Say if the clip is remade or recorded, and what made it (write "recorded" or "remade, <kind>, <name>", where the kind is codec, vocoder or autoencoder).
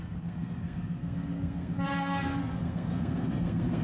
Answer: remade, codec, SNAC